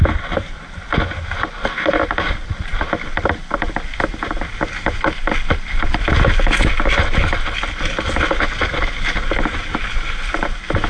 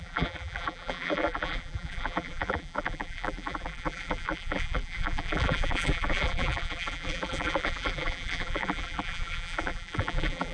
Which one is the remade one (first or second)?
second